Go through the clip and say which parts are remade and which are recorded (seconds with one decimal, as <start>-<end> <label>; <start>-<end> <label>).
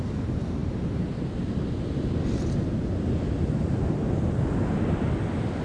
0.0-0.6 recorded; 0.6-1.4 remade; 1.4-5.6 recorded